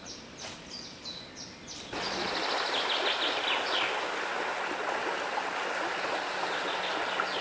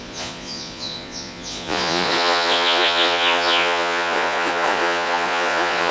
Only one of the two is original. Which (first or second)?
first